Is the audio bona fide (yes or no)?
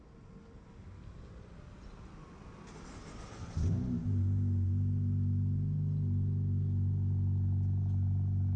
yes